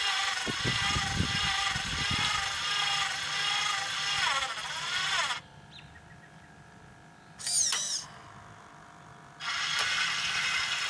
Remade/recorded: recorded